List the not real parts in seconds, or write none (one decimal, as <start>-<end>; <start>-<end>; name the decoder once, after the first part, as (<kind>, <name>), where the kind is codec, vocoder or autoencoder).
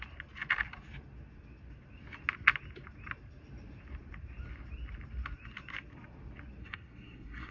6.6-7.5 (codec, SNAC)